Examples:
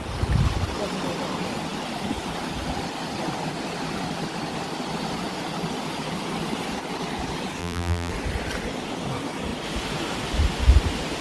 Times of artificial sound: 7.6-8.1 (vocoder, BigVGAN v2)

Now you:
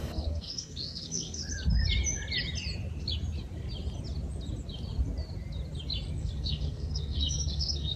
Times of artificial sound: 0.0-1.4 (codec, SNAC); 6.2-8.0

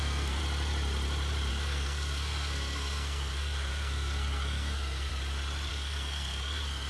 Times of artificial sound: 0.0-0.4 (codec, SNAC); 1.5-5.1; 5.7-6.9

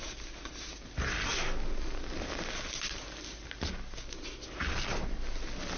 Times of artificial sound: none

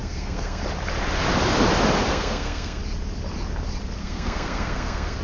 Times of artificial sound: 0.0-0.6 (codec, SNAC); 2.1-2.8; 4.0-5.2

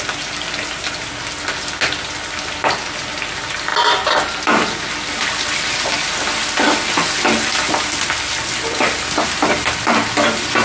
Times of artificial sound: none